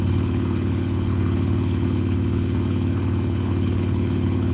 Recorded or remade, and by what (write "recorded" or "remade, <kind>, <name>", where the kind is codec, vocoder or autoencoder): remade, codec, HILCodec